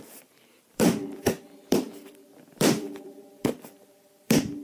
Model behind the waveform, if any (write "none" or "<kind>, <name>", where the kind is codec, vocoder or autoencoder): vocoder, BigVGAN v2